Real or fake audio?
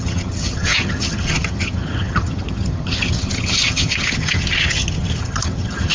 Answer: fake